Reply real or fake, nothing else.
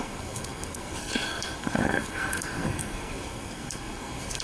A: fake